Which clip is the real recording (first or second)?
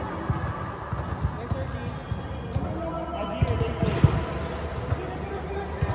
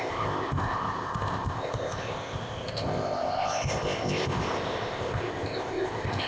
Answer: first